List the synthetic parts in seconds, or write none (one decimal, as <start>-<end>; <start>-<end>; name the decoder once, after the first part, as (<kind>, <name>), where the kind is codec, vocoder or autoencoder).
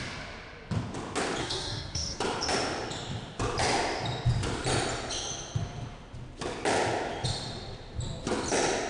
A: 1.4-2.2 (codec, SNAC)